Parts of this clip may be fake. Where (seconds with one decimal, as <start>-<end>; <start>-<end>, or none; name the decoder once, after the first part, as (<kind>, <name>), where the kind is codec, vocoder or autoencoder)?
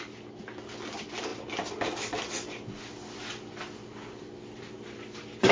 none